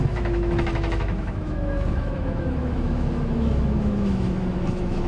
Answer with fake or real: fake